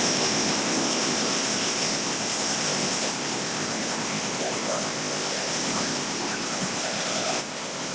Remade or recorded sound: remade